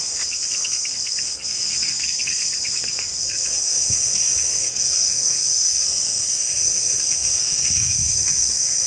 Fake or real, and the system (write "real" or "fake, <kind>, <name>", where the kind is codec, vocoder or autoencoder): fake, codec, SNAC